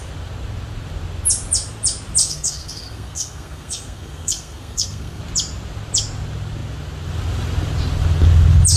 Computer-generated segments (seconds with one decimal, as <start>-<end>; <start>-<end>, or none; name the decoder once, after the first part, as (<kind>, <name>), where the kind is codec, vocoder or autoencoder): 2.2-5.2 (codec, SNAC)

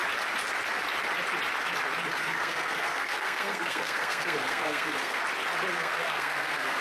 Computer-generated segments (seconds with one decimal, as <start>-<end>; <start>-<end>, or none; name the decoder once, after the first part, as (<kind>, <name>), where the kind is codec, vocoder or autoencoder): 2.2-5.2 (codec, SNAC); 5.7-6.8

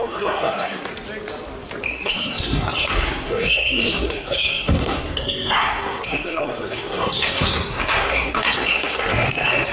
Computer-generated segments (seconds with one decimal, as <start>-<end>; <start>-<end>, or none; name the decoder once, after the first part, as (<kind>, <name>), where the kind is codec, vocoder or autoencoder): 0.0-0.9 (codec, SNAC); 1.9-9.7

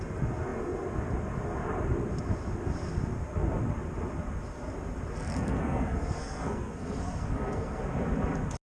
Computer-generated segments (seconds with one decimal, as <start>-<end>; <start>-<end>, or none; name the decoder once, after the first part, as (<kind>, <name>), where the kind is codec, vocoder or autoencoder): 5.3-7.8 (codec, SNAC)

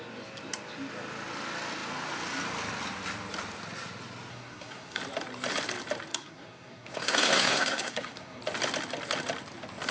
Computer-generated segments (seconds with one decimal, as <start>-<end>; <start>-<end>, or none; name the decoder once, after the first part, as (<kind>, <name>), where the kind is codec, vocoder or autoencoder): 4.3-5.0 (codec, SNAC); 6.1-8.4

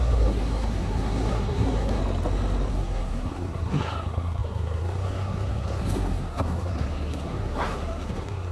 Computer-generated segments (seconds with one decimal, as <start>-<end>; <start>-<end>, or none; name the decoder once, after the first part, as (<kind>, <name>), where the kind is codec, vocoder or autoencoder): 0.0-2.0 (codec, SNAC); 2.7-8.5

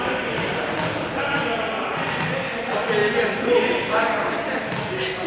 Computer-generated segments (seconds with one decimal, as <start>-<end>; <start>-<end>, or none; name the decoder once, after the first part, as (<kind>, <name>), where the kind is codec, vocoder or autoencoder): none